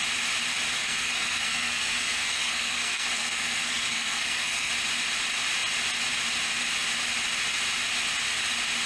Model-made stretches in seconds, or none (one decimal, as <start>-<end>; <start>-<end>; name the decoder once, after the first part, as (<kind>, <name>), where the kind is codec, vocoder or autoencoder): 0.8-4.7 (codec, SNAC)